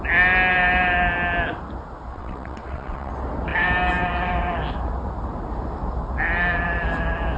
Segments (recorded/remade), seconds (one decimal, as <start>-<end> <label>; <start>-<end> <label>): 0.0-2.1 recorded; 2.1-3.1 remade; 3.1-7.4 recorded

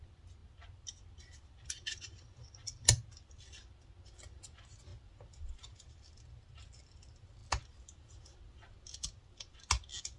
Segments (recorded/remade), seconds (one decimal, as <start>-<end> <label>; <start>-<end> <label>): 0.0-10.2 recorded

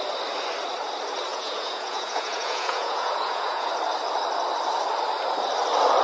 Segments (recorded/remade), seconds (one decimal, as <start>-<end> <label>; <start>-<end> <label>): 0.0-1.3 recorded; 1.3-3.7 remade; 3.7-6.0 recorded

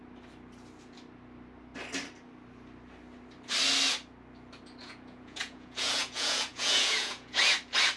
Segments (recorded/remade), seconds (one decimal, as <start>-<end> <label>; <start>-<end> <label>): 0.0-4.8 recorded; 4.8-7.4 remade; 7.4-8.0 recorded

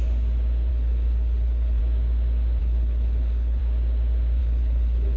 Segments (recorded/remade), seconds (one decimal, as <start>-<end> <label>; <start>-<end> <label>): 0.0-0.7 recorded; 0.7-1.8 remade; 1.8-2.6 recorded; 2.6-3.6 remade; 3.6-4.4 recorded; 4.4-5.2 remade

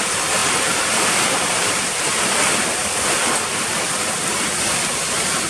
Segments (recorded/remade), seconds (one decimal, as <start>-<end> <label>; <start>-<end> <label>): 0.0-0.4 recorded; 0.4-2.2 remade; 2.2-5.5 recorded